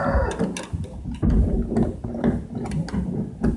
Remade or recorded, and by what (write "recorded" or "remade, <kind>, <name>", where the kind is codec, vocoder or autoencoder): recorded